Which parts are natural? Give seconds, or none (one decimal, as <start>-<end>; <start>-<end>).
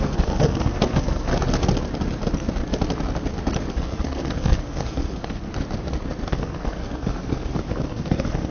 1.3-3.7; 5.5-6.3